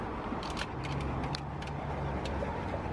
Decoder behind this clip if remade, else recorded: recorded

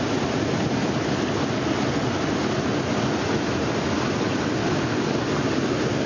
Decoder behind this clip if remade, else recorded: recorded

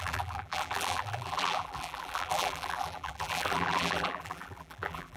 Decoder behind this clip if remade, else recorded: remade, vocoder, BigVGAN v2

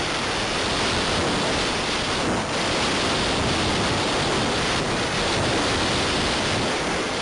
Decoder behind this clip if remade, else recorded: recorded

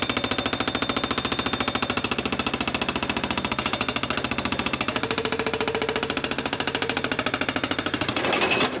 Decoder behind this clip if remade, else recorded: recorded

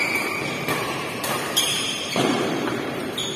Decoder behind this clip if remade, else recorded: remade, vocoder, BigVGAN v2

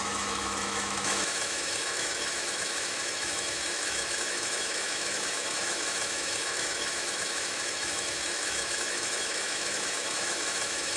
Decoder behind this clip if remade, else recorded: remade, autoencoder, DAC-VAE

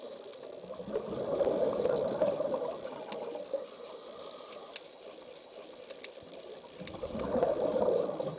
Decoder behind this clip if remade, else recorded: recorded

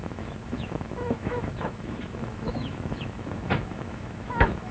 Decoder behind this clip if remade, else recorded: remade, autoencoder, DAC-VAE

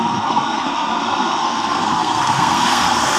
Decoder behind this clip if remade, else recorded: remade, codec, SNAC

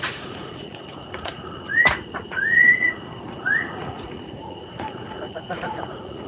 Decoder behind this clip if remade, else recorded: remade, vocoder, Vocos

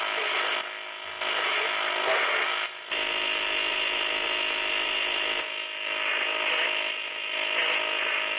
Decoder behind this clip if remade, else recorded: recorded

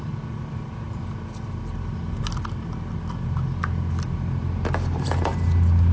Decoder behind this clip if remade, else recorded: recorded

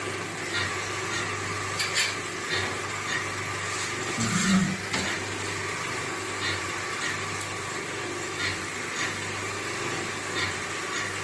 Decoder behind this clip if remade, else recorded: recorded